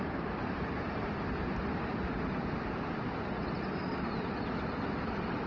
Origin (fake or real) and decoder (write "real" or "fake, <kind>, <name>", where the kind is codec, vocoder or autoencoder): fake, vocoder, BigVGAN v2